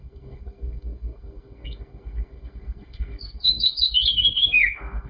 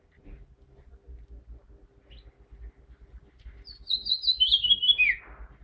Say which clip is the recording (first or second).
second